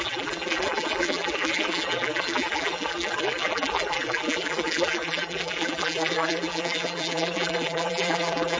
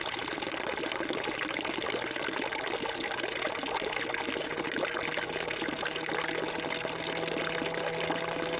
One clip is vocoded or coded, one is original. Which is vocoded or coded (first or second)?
first